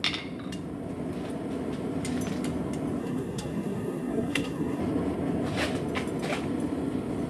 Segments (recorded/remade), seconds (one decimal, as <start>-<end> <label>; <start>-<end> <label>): 0.0-3.0 recorded; 3.0-4.8 remade; 4.8-7.3 recorded